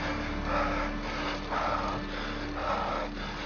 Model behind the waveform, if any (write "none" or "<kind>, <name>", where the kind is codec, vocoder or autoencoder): none